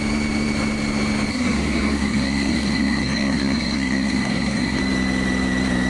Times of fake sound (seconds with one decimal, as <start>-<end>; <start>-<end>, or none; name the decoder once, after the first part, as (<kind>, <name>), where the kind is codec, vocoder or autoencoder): 1.3-4.8 (codec, SNAC)

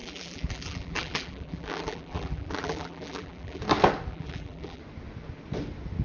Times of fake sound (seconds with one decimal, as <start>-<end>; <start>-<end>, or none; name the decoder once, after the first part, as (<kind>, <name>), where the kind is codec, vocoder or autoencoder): 0.0-3.6 (vocoder, BigVGAN v2); 4.1-4.8

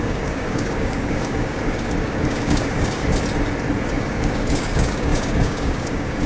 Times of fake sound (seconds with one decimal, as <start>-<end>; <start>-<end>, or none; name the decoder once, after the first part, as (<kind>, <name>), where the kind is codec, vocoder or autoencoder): 0.0-3.0 (codec, DAC); 3.9-6.3

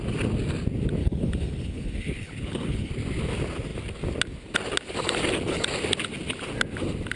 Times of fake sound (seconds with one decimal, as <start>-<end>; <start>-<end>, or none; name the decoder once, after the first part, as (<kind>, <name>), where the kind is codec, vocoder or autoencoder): 1.0-2.9 (codec, HILCodec)

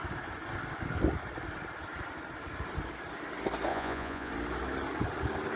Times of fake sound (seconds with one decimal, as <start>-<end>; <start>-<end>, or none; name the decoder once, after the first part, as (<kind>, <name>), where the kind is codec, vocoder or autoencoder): 3.7-4.3 (vocoder, Vocos)

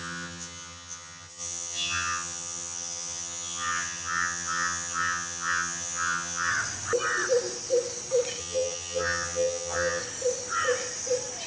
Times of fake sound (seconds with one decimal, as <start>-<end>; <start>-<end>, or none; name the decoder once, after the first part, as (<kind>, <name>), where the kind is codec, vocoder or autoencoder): 0.0-6.5 (vocoder, HiFi-GAN); 8.4-10.0

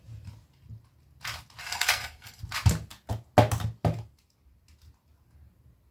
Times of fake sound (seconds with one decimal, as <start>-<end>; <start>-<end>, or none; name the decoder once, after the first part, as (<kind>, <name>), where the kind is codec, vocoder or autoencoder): 1.6-2.4 (codec, SNAC)